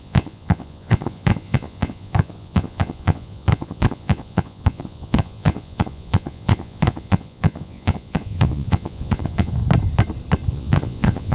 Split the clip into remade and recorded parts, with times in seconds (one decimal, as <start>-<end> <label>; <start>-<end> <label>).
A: 0.0-9.6 remade; 9.6-10.5 recorded; 10.5-11.3 remade